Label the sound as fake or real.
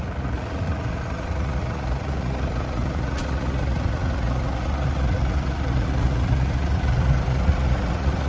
fake